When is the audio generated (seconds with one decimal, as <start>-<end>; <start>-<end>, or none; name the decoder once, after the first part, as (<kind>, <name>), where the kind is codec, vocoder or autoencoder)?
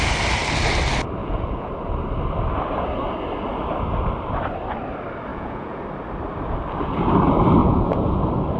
1.2-1.7 (vocoder, Vocos); 5.3-5.8; 7.6-8.2